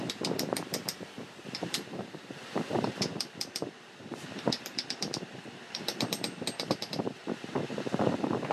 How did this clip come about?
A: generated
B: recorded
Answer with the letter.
A